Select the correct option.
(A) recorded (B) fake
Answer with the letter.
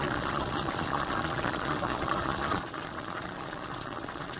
B